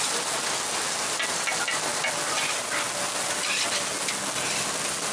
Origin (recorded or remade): recorded